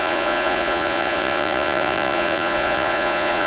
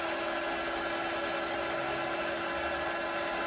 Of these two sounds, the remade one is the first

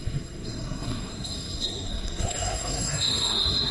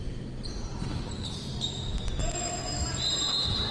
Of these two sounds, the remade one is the first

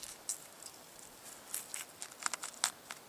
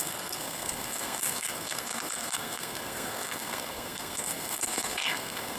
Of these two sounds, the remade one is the second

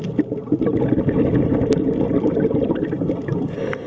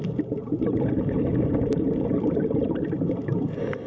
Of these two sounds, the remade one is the second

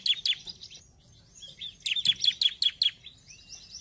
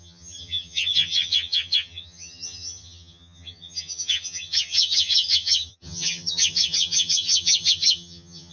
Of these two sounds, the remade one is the second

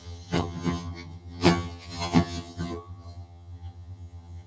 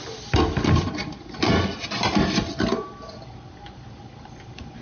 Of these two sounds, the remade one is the first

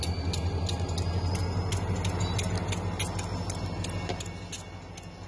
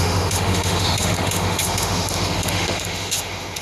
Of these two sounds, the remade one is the second